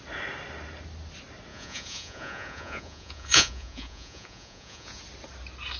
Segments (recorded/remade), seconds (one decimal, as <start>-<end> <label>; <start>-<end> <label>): 0.0-1.5 recorded; 1.5-5.0 remade; 5.0-5.8 recorded